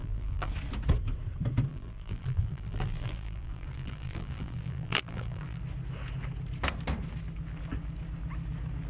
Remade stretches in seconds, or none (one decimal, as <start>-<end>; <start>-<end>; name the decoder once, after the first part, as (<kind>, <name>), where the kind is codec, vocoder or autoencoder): 0.0-0.5 (vocoder, BigVGAN v2); 1.7-5.6